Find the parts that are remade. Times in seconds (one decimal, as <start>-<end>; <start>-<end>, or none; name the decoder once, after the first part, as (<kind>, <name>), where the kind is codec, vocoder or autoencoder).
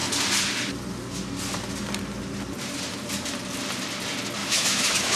4.4-5.2 (autoencoder, DAC-VAE)